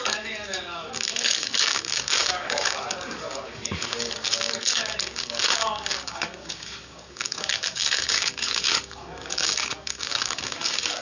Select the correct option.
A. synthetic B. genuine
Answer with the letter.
A